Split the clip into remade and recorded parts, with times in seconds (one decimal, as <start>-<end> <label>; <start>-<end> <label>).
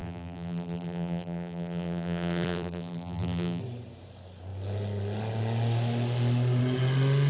0.0-3.6 remade; 3.6-7.3 recorded